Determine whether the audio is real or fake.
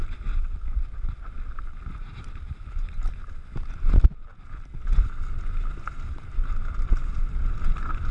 real